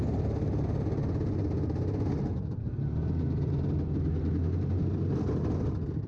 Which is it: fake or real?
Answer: real